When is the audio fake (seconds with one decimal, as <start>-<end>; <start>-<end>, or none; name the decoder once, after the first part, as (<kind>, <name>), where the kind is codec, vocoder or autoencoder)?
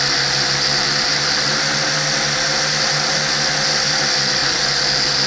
none